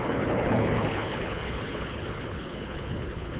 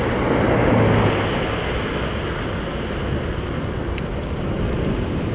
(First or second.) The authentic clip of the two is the second